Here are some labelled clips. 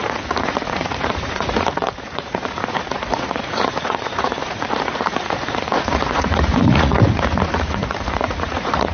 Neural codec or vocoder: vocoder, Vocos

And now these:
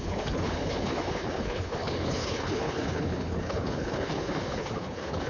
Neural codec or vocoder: codec, HILCodec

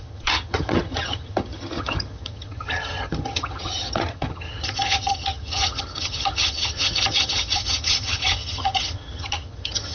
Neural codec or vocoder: vocoder, HiFi-GAN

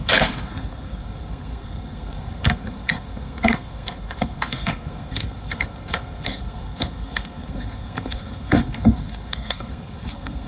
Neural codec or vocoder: codec, SNAC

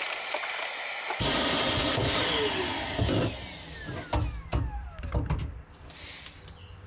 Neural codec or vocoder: none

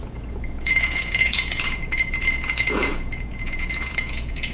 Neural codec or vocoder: vocoder, Vocos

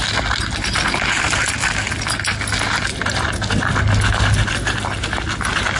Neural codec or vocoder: none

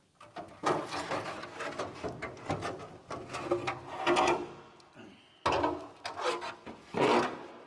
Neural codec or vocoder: none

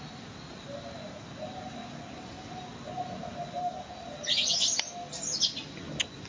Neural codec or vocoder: none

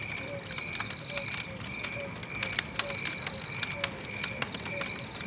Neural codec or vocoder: none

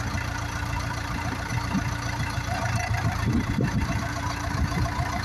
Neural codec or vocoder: vocoder, BigVGAN v2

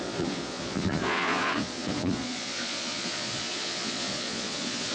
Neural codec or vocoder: vocoder, Vocos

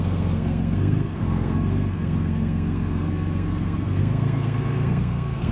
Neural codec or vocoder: codec, SNAC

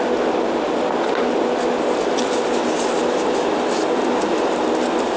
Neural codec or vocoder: none